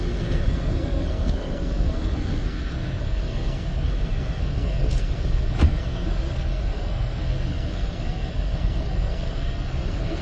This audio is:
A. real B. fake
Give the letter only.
B